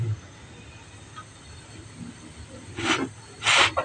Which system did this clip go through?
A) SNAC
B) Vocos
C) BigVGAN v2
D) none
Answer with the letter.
D